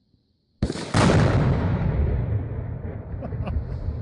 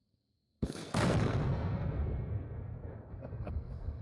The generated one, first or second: second